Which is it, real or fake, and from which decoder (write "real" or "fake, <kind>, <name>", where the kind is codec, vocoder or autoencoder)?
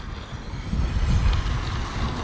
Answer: real